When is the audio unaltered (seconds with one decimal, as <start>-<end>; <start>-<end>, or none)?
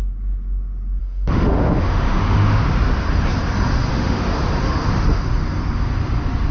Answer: 0.0-1.0; 2.6-3.9; 5.2-6.5